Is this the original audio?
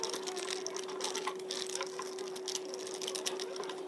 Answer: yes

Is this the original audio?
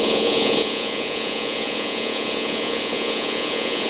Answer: no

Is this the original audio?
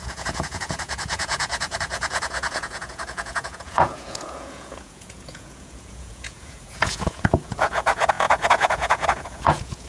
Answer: no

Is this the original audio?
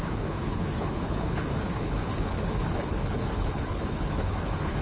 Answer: no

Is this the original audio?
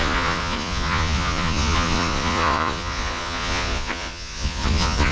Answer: no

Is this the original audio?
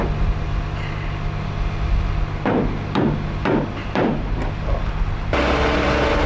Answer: yes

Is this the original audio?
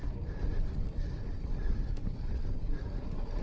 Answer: yes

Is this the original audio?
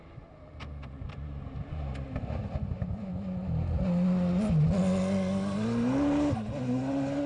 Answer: yes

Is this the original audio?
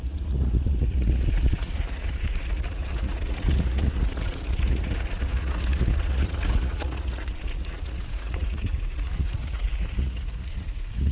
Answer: no